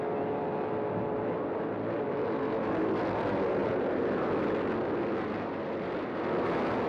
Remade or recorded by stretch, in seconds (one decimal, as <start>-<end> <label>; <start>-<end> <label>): 0.0-3.6 recorded; 3.6-4.3 remade; 4.3-6.9 recorded